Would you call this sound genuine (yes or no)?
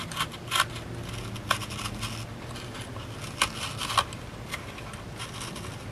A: yes